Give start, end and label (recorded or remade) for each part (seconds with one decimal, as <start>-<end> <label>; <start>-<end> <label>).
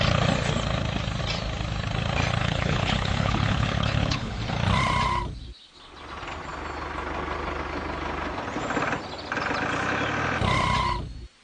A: 0.0-2.4 recorded; 2.4-4.3 remade; 4.3-11.4 recorded